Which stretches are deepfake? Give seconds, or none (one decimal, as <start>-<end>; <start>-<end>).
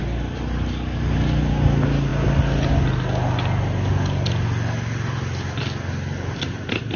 none